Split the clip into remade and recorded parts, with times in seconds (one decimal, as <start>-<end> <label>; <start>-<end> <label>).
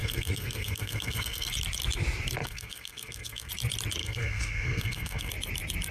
0.0-1.5 remade; 1.5-2.4 recorded; 2.4-3.5 remade; 3.5-4.0 recorded; 4.0-5.3 remade; 5.3-5.9 recorded